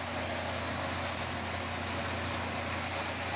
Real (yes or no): yes